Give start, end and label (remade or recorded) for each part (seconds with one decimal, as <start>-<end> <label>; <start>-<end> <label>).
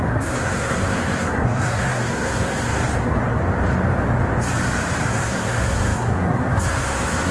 0.0-3.4 remade; 3.4-5.0 recorded; 5.0-7.3 remade